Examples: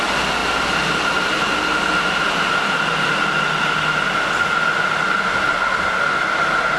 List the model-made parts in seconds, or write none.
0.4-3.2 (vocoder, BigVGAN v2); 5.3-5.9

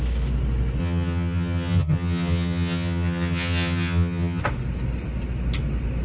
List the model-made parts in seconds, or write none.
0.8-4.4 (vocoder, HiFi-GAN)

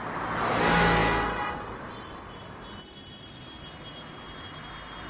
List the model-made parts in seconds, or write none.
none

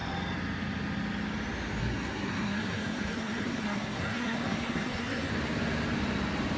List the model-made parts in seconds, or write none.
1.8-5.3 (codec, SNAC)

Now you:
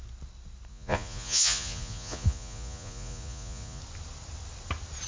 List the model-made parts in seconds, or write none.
0.7-3.8 (vocoder, Vocos)

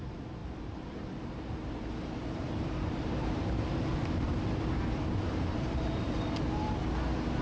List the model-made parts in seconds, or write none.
0.4-1.7 (vocoder, BigVGAN v2); 2.2-6.4